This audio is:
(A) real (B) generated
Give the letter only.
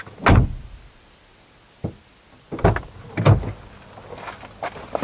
A